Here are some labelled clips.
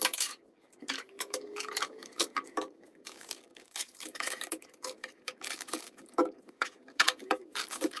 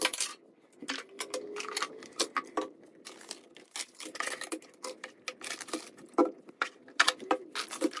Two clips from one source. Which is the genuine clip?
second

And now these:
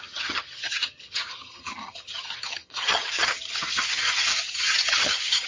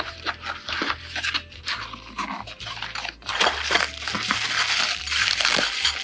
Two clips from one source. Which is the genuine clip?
second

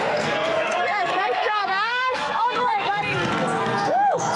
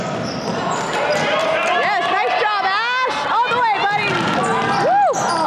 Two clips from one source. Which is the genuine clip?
second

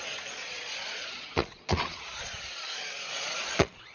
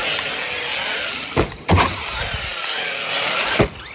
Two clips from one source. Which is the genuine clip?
second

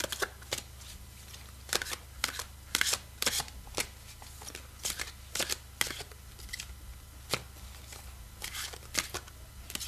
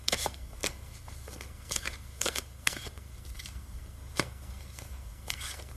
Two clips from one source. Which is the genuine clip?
first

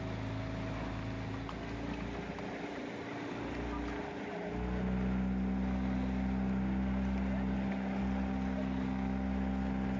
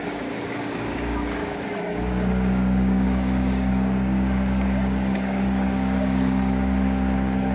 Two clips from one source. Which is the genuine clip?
first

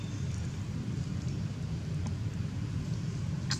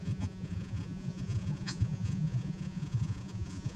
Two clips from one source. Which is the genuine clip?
first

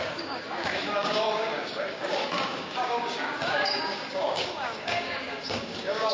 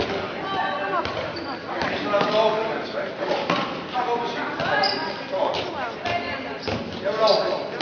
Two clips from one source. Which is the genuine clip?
second